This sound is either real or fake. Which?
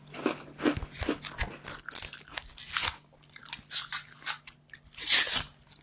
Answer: real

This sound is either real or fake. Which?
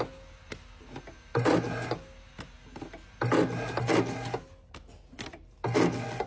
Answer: real